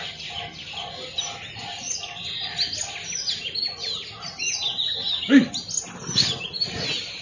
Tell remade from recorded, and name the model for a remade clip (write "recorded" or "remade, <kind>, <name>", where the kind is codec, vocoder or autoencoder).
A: recorded